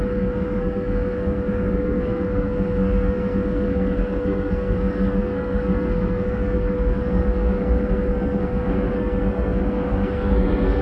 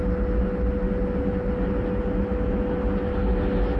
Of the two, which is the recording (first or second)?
second